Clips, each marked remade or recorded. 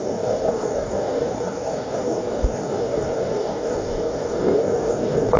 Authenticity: remade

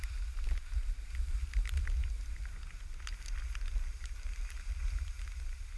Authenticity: recorded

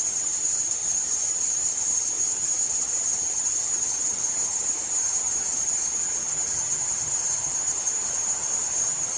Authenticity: remade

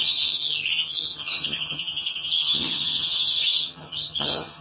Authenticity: remade